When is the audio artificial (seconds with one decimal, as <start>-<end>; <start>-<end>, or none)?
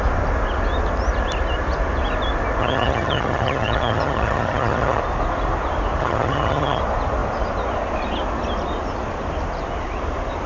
2.6-5.0; 6.0-6.8